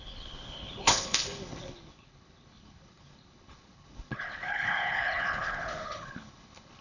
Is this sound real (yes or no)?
no